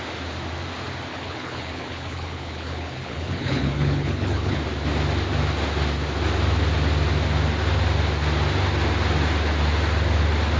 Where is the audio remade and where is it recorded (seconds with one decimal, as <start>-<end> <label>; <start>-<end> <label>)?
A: 0.0-1.1 recorded; 1.1-4.6 remade; 4.6-10.6 recorded